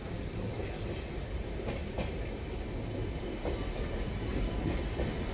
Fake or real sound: real